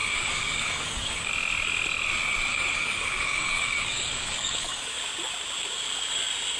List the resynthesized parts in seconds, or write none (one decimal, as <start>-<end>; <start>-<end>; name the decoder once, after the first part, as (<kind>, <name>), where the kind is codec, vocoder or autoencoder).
0.0-1.3 (codec, DAC); 2.5-5.0